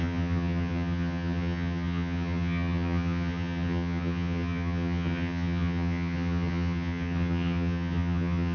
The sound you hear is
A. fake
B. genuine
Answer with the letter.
A